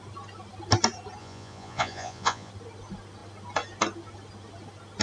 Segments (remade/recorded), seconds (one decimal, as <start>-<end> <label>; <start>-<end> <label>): 0.0-1.2 recorded; 1.2-2.5 remade; 2.5-5.0 recorded